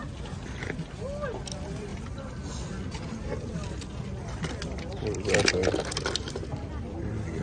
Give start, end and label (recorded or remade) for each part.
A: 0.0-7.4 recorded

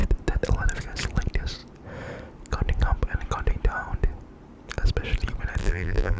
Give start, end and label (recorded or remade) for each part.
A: 0.0-5.6 recorded; 5.6-6.2 remade

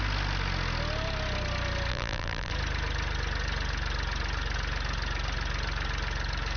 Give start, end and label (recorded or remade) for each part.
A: 0.0-1.9 recorded; 1.9-2.5 remade; 2.5-6.6 recorded

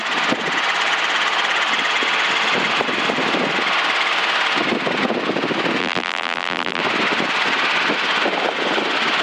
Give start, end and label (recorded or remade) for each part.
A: 0.0-5.8 recorded; 5.8-6.8 remade; 6.8-9.2 recorded

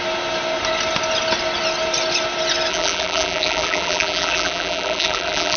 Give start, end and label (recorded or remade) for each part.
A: 0.0-2.7 recorded; 2.7-5.6 remade

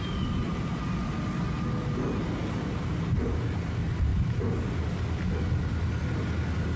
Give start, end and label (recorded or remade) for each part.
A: 0.0-0.7 remade; 0.7-2.4 recorded; 2.4-3.0 remade; 3.0-4.1 recorded; 4.1-4.7 remade; 4.7-6.8 recorded